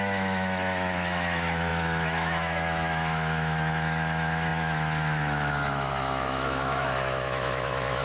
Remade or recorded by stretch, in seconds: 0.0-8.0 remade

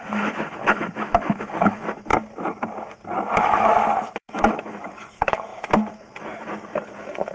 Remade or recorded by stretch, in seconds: 0.0-2.1 remade; 2.1-3.4 recorded; 3.4-7.3 remade

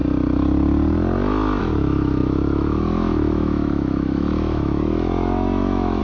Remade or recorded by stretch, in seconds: 0.0-1.6 recorded; 1.6-6.0 remade

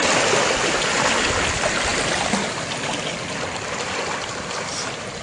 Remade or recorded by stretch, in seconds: 0.0-5.2 recorded

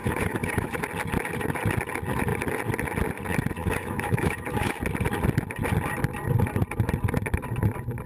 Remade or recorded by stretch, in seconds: 0.0-0.8 remade; 0.8-3.6 recorded; 3.6-4.8 remade; 4.8-8.1 recorded

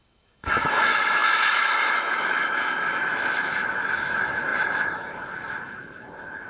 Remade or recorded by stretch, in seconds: 0.0-6.5 remade

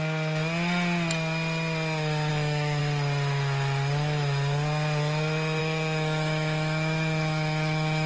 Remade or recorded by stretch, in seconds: 0.0-2.3 recorded; 2.3-2.8 remade; 2.8-5.6 recorded; 5.6-8.1 remade

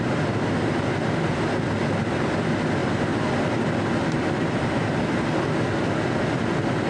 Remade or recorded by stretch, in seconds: 0.0-6.9 recorded